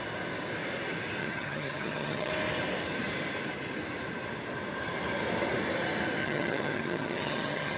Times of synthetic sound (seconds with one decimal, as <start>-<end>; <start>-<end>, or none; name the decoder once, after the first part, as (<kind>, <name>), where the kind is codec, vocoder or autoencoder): 1.2-2.3 (vocoder, HiFi-GAN); 6.2-7.8